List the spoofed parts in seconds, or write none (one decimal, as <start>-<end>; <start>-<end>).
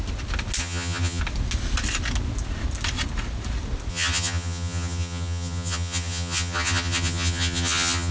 0.6-1.2; 3.9-8.1